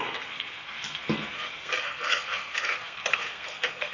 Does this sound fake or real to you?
fake